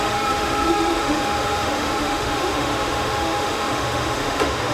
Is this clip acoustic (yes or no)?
no